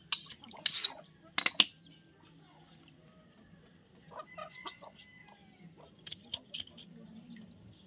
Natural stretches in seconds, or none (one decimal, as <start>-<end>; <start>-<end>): 0.0-4.4; 5.0-7.9